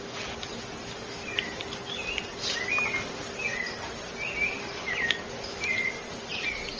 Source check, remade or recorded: recorded